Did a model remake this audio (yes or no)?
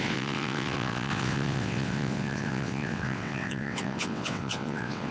yes